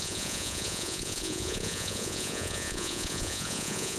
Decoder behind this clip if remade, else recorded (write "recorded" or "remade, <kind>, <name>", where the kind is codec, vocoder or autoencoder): remade, vocoder, Vocos